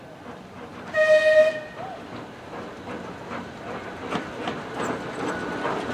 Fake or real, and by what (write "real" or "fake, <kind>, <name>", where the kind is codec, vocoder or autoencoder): real